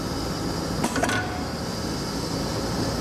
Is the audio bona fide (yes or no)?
yes